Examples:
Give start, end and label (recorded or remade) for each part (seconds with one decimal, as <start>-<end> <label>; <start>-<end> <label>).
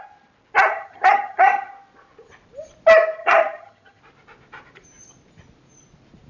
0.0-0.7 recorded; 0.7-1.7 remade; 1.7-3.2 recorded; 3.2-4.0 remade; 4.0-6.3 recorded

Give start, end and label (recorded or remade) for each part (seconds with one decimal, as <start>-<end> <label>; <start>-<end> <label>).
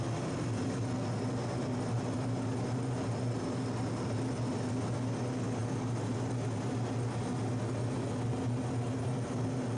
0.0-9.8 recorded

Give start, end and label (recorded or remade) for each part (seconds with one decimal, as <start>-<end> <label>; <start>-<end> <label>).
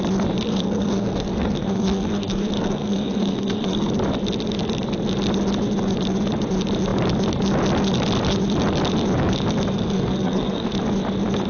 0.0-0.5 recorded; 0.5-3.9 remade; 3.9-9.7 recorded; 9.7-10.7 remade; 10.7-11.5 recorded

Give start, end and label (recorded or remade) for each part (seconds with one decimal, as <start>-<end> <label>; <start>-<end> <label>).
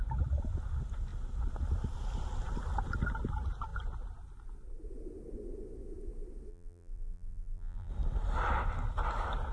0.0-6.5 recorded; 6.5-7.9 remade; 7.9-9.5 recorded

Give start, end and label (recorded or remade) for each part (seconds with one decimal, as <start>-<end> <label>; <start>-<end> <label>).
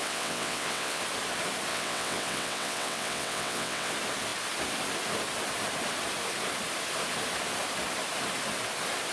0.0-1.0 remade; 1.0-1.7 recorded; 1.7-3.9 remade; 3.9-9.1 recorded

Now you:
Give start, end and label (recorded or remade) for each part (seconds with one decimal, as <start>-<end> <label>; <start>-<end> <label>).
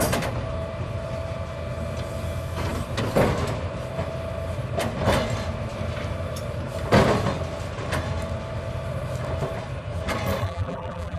0.0-10.4 recorded; 10.4-11.2 remade